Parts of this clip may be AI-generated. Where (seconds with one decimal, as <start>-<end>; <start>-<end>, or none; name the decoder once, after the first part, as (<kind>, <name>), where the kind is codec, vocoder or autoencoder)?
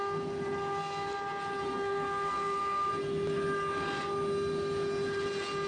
1.7-2.9 (codec, SNAC)